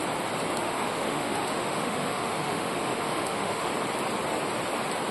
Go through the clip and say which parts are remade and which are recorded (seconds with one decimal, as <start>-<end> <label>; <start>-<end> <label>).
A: 0.0-0.6 recorded; 0.6-3.7 remade; 3.7-5.1 recorded